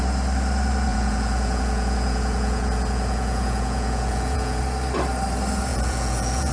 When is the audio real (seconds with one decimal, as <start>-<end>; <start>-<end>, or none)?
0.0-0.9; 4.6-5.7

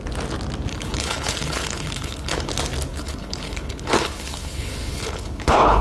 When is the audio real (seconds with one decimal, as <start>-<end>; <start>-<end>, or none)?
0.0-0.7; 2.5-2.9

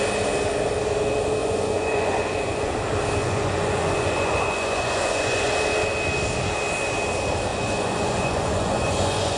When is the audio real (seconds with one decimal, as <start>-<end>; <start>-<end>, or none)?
0.0-1.4; 2.7-3.2; 5.5-7.5